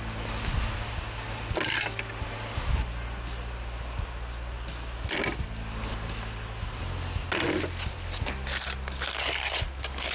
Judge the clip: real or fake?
real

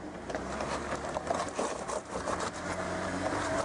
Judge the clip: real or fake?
fake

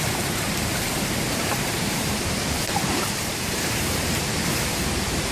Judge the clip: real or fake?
fake